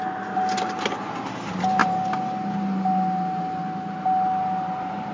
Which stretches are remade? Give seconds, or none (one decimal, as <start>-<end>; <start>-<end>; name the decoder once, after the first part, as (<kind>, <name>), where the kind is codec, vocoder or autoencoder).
none